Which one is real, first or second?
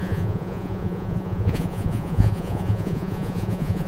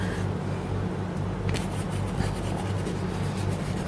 second